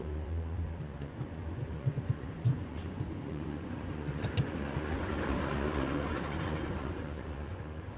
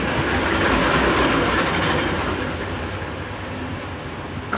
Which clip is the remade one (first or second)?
first